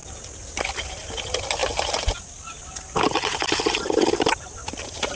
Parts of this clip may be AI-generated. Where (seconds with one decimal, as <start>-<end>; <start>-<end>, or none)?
none